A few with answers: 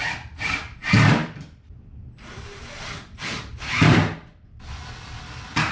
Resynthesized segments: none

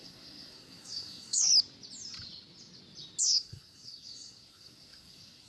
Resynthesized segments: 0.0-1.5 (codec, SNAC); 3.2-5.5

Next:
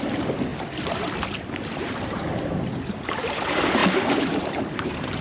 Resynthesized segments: 0.0-0.5 (vocoder, BigVGAN v2); 1.7-2.2; 2.9-5.2

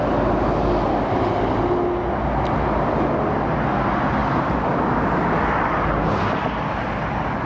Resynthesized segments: none